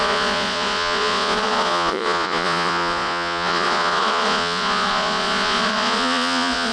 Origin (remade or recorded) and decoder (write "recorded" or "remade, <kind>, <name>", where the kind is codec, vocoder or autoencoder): remade, vocoder, Vocos